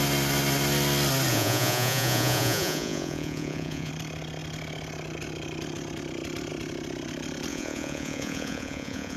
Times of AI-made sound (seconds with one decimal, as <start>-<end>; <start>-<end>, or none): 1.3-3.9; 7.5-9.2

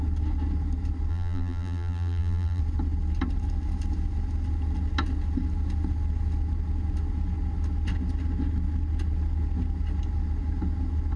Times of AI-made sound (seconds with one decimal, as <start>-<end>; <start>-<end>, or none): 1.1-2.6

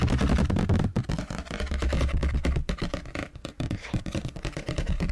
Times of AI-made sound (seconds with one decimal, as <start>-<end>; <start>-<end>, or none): 3.2-5.1

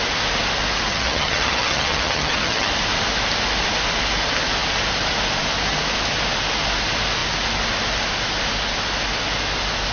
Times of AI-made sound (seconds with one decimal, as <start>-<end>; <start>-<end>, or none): 0.9-2.7

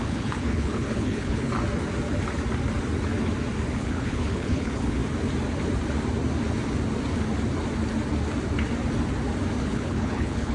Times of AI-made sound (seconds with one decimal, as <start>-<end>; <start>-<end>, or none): 0.0-1.5; 3.8-5.0; 9.6-10.5

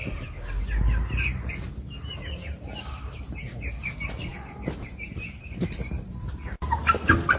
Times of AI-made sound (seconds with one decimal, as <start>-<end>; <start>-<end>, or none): 2.8-7.4

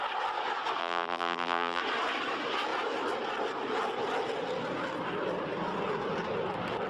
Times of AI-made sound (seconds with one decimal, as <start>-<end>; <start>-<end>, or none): 0.8-1.8

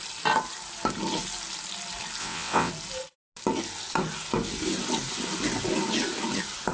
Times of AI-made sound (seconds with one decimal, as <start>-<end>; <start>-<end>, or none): 2.2-2.7